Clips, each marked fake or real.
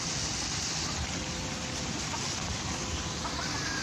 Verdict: real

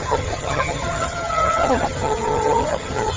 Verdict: fake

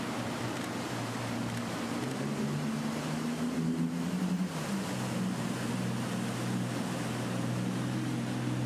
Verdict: real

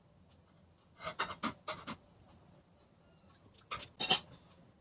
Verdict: real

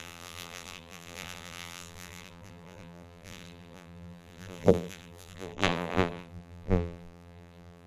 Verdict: fake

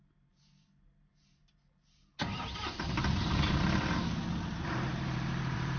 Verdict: fake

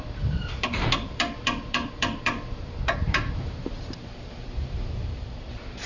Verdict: fake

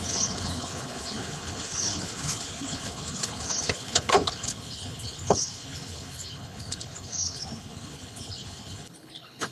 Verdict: fake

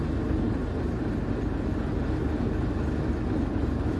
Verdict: real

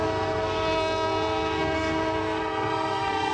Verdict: fake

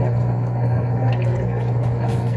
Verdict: fake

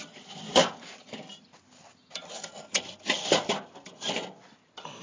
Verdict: real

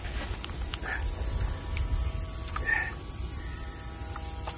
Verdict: real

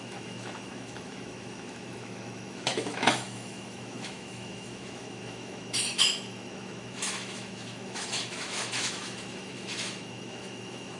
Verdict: fake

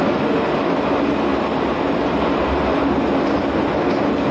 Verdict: real